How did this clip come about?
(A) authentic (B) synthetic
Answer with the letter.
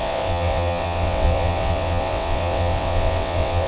B